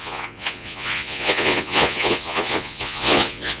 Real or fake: fake